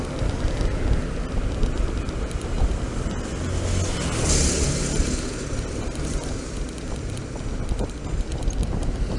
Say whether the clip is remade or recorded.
recorded